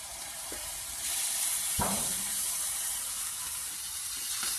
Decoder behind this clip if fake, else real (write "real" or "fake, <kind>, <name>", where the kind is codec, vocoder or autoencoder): fake, vocoder, BigVGAN v2